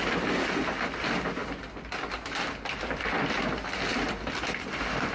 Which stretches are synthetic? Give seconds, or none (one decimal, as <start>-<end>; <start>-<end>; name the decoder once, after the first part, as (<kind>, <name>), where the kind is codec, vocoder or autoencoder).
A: none

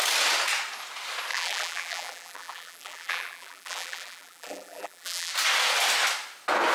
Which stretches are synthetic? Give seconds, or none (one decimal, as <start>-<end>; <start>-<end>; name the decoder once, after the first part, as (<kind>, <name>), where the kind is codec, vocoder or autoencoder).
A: 1.3-5.3 (vocoder, BigVGAN v2)